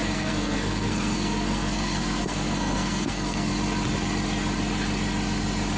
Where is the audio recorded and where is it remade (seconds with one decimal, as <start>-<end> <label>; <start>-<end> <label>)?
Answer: 0.0-3.5 remade; 3.5-5.8 recorded